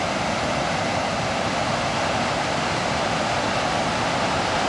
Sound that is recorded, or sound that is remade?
recorded